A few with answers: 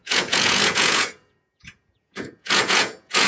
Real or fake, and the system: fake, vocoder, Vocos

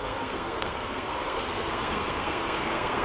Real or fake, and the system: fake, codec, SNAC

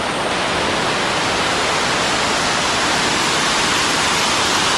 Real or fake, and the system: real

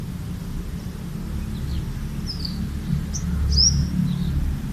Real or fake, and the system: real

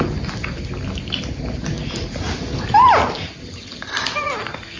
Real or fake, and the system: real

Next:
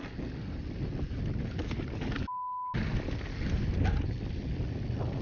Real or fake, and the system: real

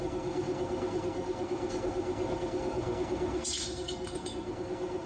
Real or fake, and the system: fake, codec, SNAC